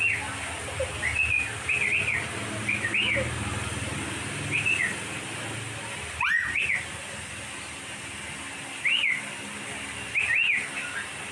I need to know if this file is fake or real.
real